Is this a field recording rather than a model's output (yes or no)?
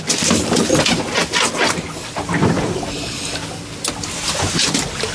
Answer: yes